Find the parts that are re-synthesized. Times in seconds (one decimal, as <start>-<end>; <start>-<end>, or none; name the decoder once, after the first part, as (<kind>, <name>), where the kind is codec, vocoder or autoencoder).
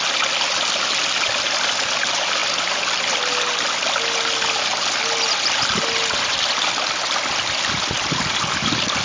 none